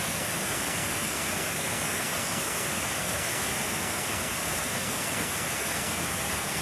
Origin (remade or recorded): remade